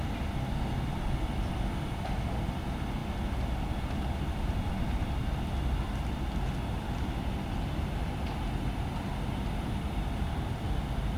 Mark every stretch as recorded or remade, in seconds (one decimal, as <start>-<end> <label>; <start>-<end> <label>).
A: 0.0-11.2 recorded